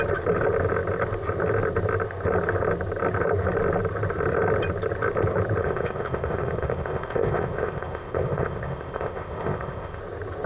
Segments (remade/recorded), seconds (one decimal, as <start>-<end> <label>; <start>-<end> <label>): 0.0-5.6 recorded; 5.6-10.0 remade; 10.0-10.5 recorded